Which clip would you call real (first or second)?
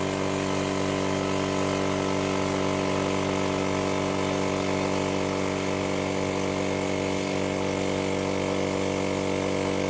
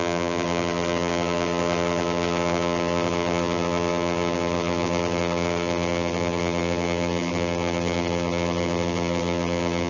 first